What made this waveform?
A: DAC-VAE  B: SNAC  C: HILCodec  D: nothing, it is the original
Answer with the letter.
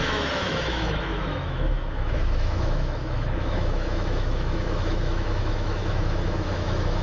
A